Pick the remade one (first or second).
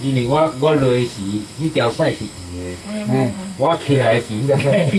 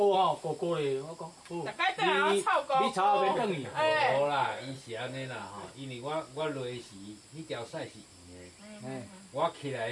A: first